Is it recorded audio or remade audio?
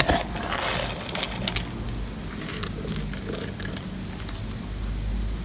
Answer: recorded